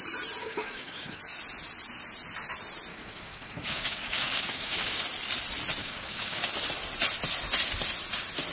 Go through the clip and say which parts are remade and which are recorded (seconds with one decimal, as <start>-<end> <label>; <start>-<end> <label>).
0.0-0.4 recorded; 0.4-1.2 remade; 1.2-2.9 recorded; 2.9-5.0 remade; 5.0-5.8 recorded; 5.8-6.5 remade; 6.5-8.5 recorded